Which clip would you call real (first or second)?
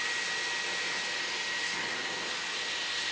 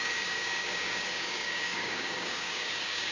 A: first